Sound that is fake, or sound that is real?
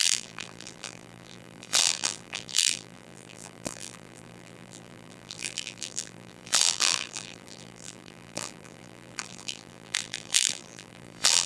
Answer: fake